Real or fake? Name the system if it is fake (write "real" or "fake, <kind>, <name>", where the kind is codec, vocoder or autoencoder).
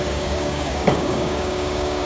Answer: fake, codec, DAC